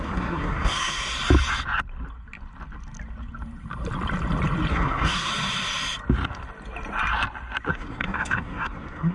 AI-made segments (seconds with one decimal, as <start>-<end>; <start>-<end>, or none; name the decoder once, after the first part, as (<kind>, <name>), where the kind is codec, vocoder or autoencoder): 0.0-1.0 (codec, SNAC); 4.7-5.3; 7.7-9.1